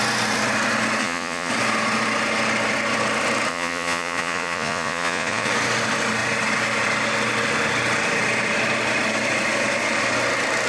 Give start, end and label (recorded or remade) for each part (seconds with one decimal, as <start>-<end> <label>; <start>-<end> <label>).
0.0-1.0 recorded; 1.0-1.5 remade; 1.5-3.5 recorded; 3.5-5.5 remade; 5.5-10.7 recorded